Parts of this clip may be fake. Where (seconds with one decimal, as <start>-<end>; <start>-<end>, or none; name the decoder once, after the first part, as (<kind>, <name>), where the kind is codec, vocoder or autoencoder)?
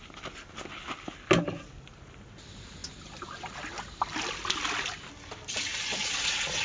5.7-6.6 (vocoder, Vocos)